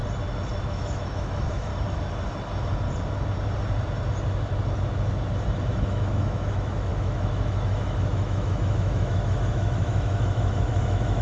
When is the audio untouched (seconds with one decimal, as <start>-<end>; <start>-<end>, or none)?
0.0-0.6; 1.7-5.7